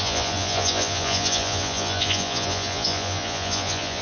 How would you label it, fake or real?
fake